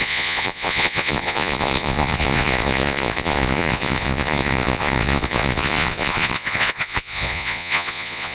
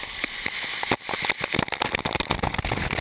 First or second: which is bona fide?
second